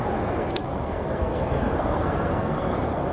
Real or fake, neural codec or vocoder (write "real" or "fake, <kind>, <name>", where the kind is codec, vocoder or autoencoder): fake, codec, SNAC